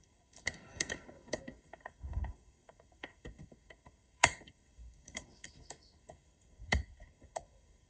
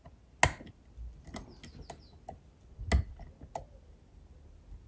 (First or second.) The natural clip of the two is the second